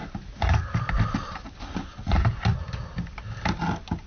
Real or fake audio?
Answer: real